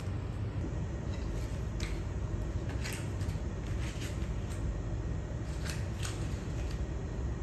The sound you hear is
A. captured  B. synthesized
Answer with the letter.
A